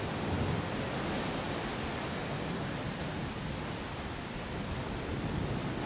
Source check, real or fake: real